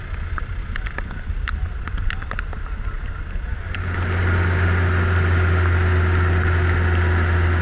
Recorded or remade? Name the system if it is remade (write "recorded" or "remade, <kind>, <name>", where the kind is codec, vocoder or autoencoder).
recorded